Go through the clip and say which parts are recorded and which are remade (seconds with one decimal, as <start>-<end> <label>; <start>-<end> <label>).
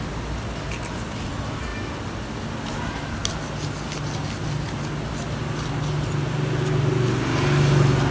0.0-8.1 recorded